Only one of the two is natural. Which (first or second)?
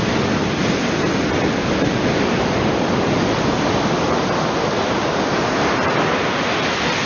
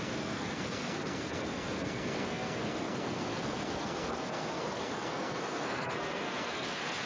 first